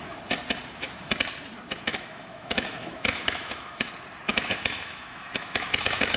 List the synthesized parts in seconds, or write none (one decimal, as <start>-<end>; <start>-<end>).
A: 1.9-3.9; 4.3-6.2